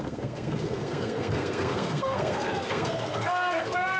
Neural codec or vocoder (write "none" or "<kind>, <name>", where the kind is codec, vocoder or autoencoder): codec, SNAC